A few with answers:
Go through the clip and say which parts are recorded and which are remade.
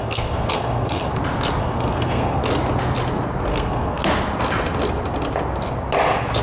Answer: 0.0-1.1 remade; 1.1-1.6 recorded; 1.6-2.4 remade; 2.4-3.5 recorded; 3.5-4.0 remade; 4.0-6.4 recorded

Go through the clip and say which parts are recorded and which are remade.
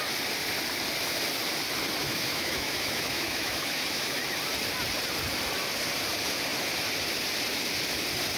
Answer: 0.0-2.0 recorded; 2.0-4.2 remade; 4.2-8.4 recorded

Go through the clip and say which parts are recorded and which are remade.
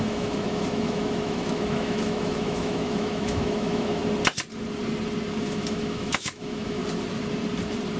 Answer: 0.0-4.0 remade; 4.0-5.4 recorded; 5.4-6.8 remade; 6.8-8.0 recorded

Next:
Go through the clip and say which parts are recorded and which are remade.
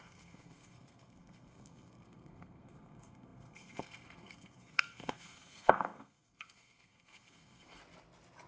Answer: 0.0-7.8 remade; 7.8-8.5 recorded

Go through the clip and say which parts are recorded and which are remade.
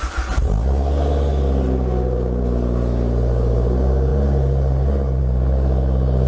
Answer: 0.0-6.3 recorded